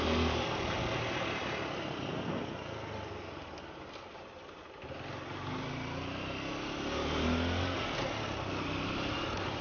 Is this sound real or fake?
real